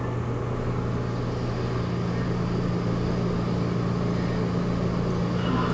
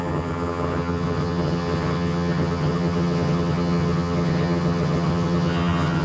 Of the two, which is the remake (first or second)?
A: second